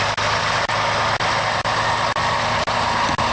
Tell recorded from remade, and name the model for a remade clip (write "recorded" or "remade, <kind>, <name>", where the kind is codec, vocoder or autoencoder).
recorded